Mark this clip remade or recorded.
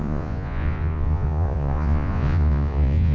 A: remade